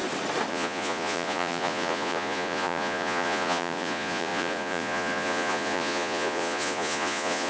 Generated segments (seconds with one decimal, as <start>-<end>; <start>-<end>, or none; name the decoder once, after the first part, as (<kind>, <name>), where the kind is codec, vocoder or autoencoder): 0.5-7.5 (vocoder, Vocos)